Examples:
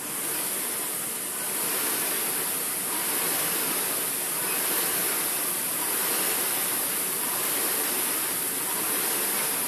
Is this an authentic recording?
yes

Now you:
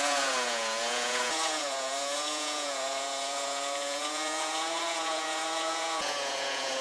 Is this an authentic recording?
no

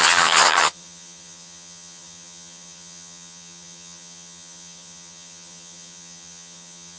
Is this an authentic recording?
no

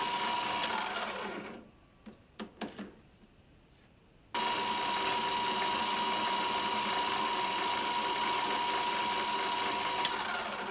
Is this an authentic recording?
yes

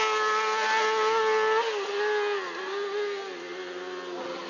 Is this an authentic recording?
yes